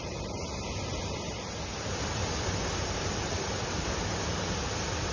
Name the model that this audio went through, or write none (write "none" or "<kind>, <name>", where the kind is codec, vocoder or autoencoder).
none